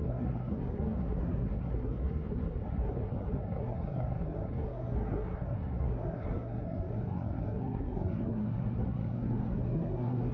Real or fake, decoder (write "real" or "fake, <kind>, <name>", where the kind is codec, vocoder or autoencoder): fake, codec, SNAC